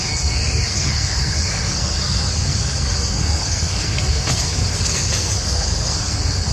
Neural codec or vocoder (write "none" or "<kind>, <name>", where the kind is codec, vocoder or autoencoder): codec, SNAC